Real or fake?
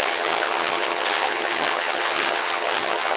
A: fake